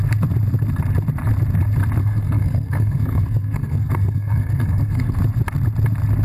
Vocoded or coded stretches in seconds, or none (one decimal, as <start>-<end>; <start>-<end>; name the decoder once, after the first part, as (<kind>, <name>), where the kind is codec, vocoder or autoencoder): 2.0-5.2 (codec, SNAC)